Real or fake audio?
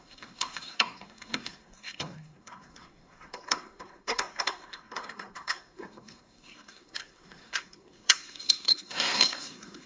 fake